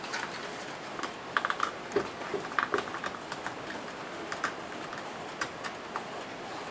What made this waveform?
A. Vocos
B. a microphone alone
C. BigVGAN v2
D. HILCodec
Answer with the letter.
B